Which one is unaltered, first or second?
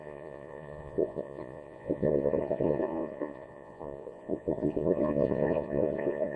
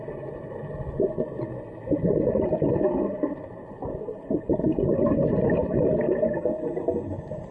second